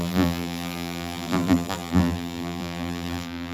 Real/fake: fake